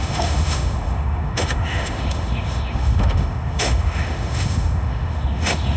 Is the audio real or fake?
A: fake